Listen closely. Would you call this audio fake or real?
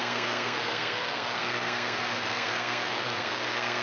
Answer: fake